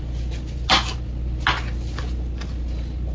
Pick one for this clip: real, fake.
real